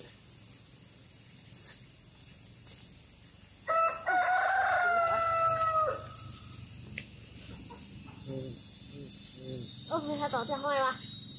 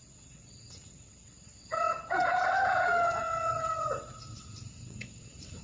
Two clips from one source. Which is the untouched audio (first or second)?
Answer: first